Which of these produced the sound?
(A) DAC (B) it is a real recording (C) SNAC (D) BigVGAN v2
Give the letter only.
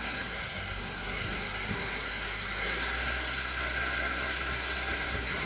C